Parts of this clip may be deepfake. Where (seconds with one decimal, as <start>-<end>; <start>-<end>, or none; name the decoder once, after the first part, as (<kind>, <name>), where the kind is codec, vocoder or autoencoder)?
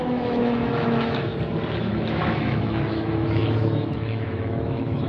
0.0-1.3 (autoencoder, DAC-VAE); 1.8-5.1